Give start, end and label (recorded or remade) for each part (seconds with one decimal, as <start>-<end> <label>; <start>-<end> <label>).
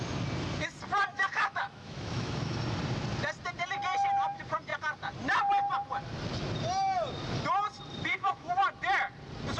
0.0-1.1 recorded; 1.1-2.6 remade; 2.6-8.1 recorded; 8.1-8.6 remade; 8.6-9.6 recorded